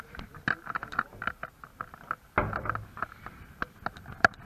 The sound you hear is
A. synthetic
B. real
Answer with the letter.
B